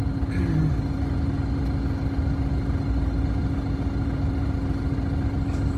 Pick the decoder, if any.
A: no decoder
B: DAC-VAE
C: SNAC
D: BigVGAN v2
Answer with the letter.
A